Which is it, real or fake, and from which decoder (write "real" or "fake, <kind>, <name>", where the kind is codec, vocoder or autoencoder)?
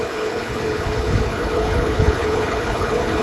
fake, codec, HILCodec